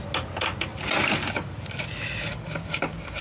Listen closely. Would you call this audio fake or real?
real